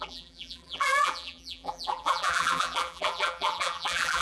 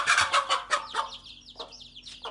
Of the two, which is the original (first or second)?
second